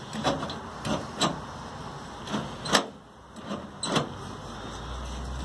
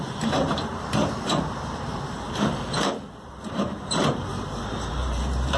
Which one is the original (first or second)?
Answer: first